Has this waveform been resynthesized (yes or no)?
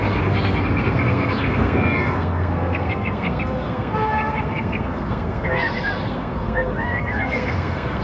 yes